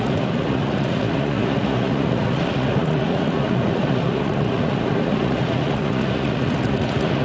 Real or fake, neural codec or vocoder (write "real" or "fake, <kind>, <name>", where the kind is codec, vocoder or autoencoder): fake, vocoder, Vocos